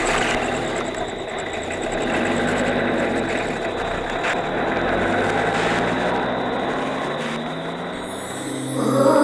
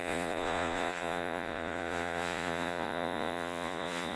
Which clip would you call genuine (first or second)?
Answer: first